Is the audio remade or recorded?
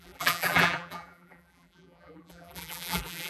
remade